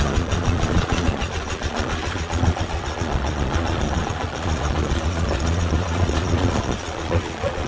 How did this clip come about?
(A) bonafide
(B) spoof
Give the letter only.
B